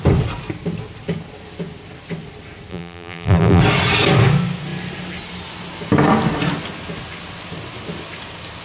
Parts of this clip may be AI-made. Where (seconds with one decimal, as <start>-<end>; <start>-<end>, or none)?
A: 2.7-3.6